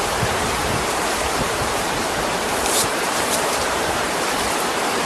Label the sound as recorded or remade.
remade